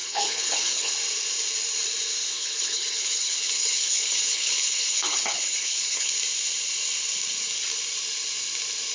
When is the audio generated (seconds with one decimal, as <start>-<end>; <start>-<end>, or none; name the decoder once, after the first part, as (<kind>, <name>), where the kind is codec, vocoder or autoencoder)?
0.0-0.9 (codec, HILCodec); 2.3-6.1